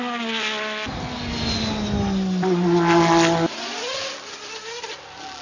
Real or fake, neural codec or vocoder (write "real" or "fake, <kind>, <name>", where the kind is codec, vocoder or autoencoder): real